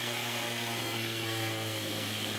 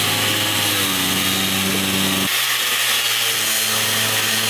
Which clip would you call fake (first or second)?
first